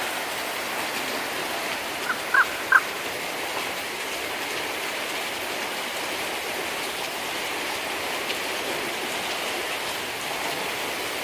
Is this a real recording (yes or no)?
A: no